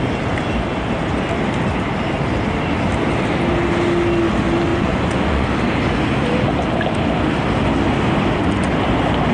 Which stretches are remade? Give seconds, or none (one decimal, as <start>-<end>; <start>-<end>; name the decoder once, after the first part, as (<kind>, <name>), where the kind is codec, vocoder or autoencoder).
4.7-5.5 (vocoder, Vocos)